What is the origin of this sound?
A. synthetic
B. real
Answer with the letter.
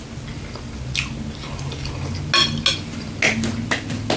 B